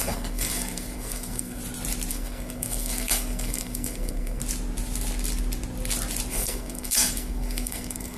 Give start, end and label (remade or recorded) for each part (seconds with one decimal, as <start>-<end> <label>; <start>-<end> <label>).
0.0-1.6 remade; 1.6-2.1 recorded; 2.1-4.4 remade; 4.4-6.3 recorded; 6.3-8.2 remade